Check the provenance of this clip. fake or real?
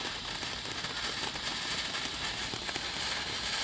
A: real